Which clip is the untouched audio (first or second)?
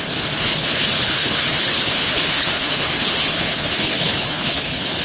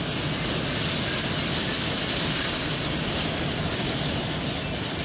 second